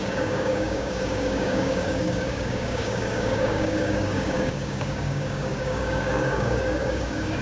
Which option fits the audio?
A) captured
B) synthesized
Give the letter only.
B